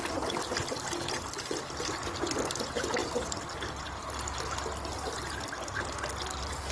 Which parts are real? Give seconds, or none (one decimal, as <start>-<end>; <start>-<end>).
0.0-6.7

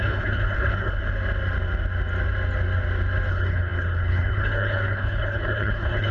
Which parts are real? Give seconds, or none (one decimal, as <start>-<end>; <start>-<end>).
1.0-3.3

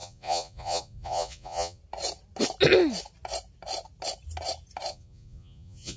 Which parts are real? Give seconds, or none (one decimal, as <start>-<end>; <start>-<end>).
1.8-4.9

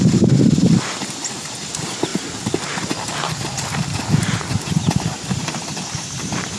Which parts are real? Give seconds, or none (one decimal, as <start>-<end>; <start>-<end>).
0.0-6.6

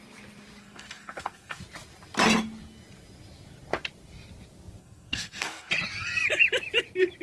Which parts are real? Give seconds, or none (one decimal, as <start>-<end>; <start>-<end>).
0.0-0.6; 1.6-4.8; 5.7-7.2